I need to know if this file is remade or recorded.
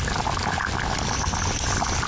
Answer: recorded